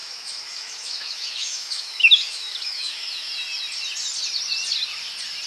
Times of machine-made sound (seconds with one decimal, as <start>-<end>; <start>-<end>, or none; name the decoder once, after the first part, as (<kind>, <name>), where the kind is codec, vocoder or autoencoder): 0.0-3.3 (autoencoder, DAC-VAE)